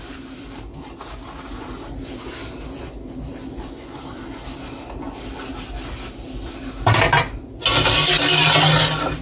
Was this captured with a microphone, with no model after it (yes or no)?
yes